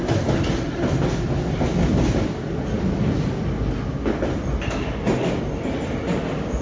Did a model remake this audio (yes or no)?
no